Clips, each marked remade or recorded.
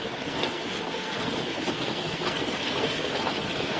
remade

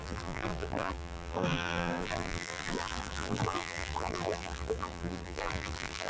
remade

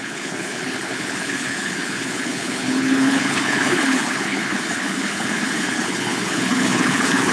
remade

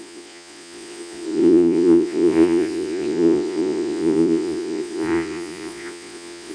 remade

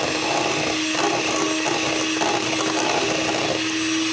recorded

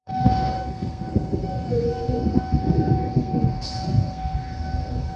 remade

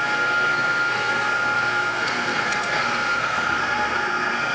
remade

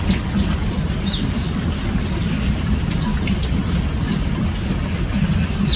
recorded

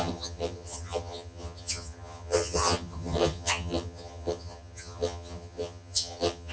remade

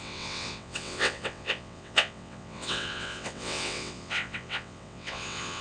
remade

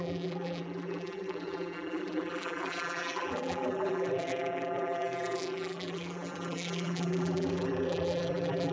remade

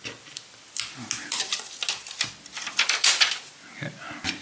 recorded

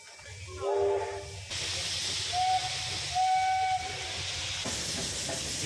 recorded